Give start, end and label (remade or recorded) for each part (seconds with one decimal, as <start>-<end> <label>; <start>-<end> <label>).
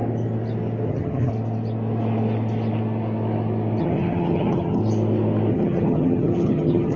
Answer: 0.0-0.9 recorded; 0.9-1.3 remade; 1.3-3.8 recorded; 3.8-4.8 remade; 4.8-5.5 recorded; 5.5-7.0 remade